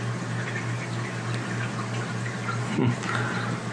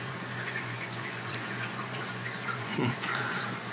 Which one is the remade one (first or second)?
second